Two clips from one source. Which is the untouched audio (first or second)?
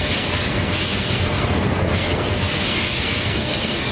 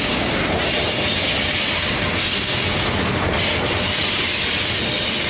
second